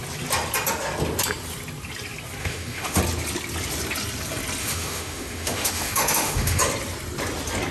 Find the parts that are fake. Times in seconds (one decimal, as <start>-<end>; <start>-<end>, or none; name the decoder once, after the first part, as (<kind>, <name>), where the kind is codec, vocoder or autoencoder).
2.4-3.0 (autoencoder, DAC-VAE); 4.6-6.6